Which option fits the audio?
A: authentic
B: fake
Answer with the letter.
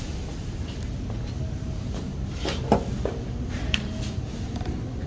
A